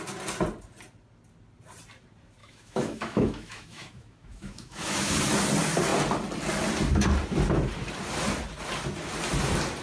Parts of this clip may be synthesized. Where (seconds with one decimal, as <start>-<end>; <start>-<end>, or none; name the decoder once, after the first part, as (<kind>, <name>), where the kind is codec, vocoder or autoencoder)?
2.4-5.1 (autoencoder, DAC-VAE)